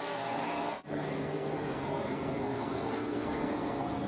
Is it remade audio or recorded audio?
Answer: remade